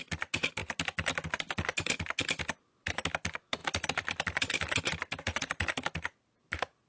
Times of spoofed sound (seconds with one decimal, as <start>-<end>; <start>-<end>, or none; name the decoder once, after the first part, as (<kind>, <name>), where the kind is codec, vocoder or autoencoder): none